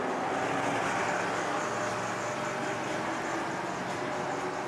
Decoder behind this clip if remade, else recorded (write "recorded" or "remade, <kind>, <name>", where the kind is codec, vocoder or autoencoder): recorded